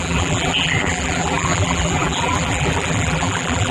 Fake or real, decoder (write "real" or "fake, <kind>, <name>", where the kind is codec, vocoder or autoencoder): fake, vocoder, BigVGAN v2